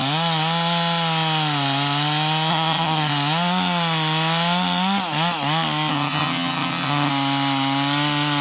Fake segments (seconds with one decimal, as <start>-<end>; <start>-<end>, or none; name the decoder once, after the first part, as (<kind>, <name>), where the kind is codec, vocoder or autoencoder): 2.5-3.1 (vocoder, HiFi-GAN); 5.9-7.1